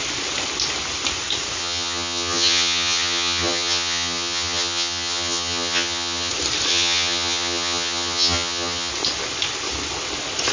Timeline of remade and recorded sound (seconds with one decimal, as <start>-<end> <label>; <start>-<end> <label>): 0.0-1.6 recorded; 1.6-6.3 remade; 6.3-6.7 recorded; 6.7-8.9 remade; 8.9-10.5 recorded